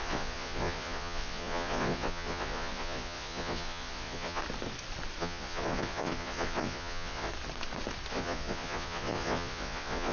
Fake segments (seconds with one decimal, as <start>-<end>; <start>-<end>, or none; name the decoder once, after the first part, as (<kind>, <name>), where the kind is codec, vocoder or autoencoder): 0.0-4.4 (vocoder, Vocos); 5.2-7.3; 8.1-10.1